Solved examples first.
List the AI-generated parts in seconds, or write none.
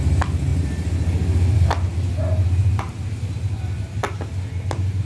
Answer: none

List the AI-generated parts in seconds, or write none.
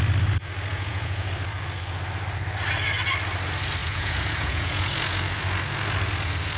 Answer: 0.7-1.3 (vocoder, Vocos); 3.8-4.9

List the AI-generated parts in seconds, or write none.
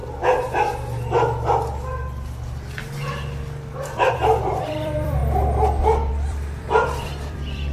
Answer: 4.1-5.2 (vocoder, BigVGAN v2); 6.1-7.7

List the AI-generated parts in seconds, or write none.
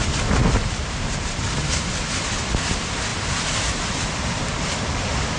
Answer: 0.4-1.5 (vocoder, BigVGAN v2); 3.1-5.4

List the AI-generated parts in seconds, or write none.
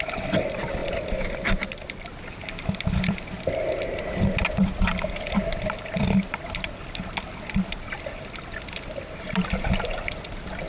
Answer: 0.8-1.7 (vocoder, BigVGAN v2)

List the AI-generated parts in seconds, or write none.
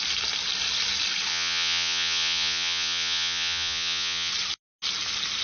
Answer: 1.3-4.3 (vocoder, Vocos)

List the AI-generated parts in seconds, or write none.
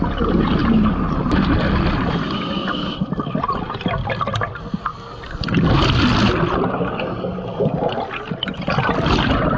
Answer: 0.0-0.6 (vocoder, BigVGAN v2); 1.2-4.9; 6.7-9.6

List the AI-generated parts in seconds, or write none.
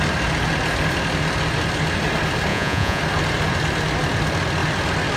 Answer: 2.5-3.0 (vocoder, Vocos)